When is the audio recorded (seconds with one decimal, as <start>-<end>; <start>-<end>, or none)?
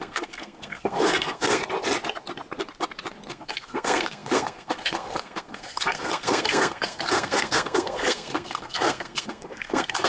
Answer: 1.6-3.3